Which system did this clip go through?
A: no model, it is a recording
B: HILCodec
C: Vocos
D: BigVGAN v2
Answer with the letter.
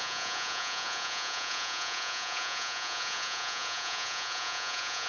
C